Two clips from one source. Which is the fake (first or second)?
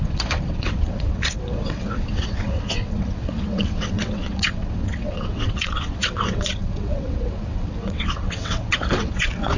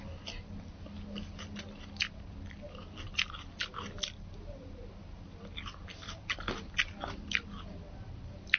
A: first